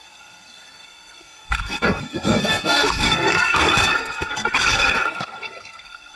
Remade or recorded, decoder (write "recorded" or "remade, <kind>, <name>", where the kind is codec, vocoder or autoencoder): remade, codec, SNAC